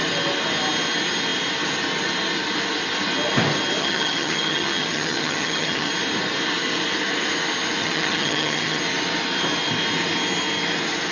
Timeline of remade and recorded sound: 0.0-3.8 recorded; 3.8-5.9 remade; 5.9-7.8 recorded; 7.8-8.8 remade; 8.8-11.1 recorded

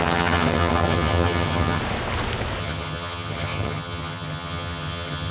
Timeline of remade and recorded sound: 0.0-1.8 remade; 1.8-2.6 recorded; 2.6-5.3 remade

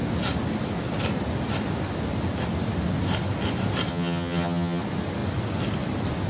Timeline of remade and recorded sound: 0.0-3.9 recorded; 3.9-4.8 remade; 4.8-6.3 recorded